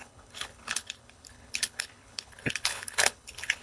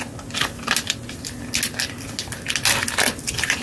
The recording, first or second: second